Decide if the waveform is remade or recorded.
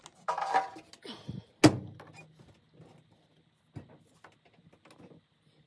recorded